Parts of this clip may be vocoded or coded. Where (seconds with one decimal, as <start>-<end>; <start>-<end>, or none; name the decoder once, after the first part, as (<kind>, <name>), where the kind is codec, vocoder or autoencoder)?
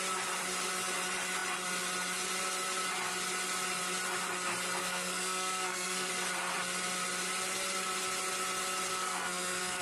4.8-6.1 (codec, SNAC); 8.9-9.8